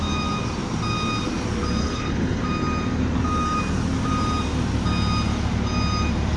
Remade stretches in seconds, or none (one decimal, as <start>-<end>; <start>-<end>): 1.8-2.4

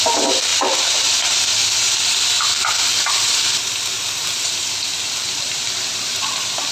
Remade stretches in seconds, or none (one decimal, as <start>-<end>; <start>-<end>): none